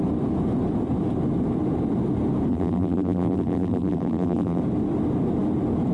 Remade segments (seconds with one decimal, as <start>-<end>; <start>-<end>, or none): 2.5-4.6